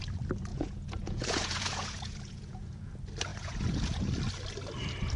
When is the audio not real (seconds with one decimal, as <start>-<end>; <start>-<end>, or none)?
0.5-2.9; 3.3-4.1